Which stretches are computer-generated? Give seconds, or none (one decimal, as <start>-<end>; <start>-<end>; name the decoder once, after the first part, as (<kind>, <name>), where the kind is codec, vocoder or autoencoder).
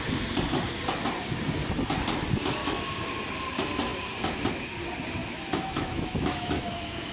2.6-3.1 (autoencoder, DAC-VAE); 5.2-7.1